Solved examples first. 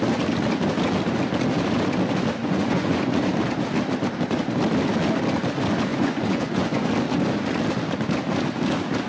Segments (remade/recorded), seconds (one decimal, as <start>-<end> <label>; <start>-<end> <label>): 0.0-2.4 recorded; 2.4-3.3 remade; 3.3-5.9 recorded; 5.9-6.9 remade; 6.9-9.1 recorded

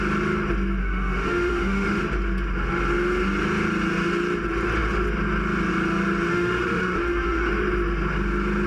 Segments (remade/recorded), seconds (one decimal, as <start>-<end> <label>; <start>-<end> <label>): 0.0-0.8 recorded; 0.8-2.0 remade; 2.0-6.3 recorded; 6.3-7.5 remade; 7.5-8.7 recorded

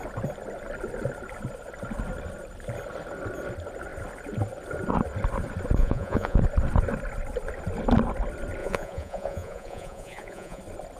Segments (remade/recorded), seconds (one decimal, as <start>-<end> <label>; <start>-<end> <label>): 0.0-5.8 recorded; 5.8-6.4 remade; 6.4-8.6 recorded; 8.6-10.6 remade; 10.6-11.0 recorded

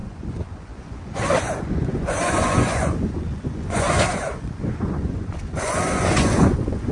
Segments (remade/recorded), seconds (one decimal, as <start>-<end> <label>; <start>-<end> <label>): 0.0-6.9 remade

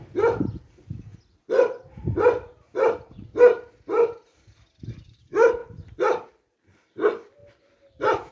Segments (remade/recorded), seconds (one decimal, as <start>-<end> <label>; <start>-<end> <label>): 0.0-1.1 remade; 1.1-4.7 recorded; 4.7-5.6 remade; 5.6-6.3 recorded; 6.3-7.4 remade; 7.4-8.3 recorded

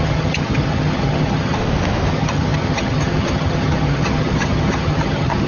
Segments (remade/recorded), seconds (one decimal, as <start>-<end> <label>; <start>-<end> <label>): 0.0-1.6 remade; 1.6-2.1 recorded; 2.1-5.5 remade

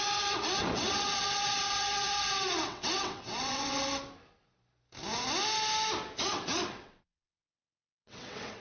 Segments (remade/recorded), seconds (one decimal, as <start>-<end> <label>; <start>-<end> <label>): 0.0-3.9 remade; 3.9-6.2 recorded; 6.2-8.6 remade